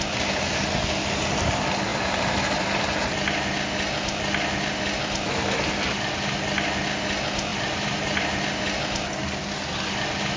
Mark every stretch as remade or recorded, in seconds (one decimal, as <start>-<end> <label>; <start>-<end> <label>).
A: 0.0-1.9 recorded; 1.9-2.7 remade; 2.7-7.5 recorded; 7.5-8.2 remade; 8.2-10.4 recorded